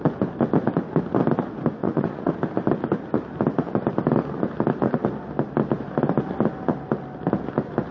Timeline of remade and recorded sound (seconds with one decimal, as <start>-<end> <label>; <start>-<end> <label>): 0.0-1.8 recorded; 1.8-2.3 remade; 2.3-7.9 recorded